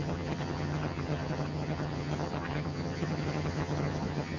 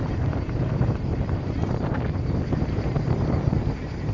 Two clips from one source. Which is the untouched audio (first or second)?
second